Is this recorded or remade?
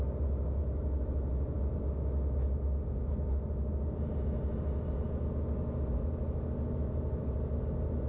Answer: recorded